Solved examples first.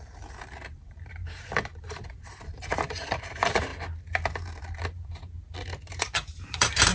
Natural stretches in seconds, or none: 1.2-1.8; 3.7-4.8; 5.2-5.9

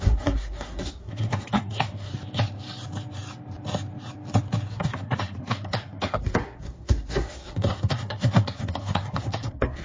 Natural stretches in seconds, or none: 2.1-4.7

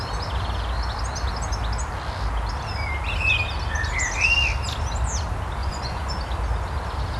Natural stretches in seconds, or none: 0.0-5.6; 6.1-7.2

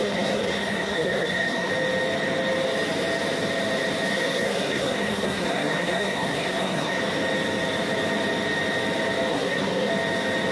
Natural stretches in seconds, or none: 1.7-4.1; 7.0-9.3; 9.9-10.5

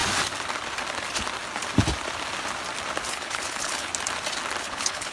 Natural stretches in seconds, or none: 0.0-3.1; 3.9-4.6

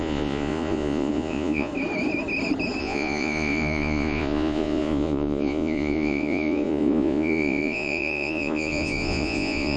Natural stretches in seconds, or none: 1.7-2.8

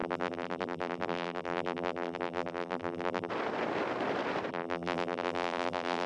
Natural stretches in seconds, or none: 3.3-4.5